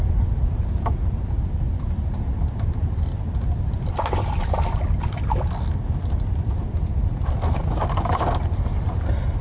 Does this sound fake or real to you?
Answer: real